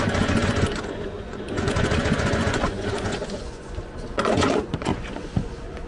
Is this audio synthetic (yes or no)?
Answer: yes